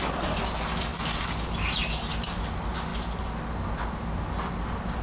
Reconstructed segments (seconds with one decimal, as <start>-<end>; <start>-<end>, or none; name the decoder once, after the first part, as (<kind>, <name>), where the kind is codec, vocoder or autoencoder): none